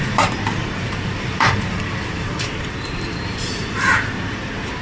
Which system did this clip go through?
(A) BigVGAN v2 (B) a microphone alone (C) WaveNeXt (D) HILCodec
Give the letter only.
A